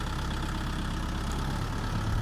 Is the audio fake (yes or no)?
no